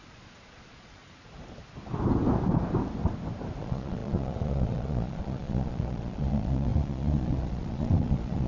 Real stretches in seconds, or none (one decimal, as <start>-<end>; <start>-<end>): 1.0-3.6